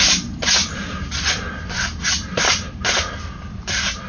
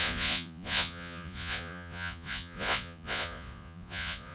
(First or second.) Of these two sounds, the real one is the first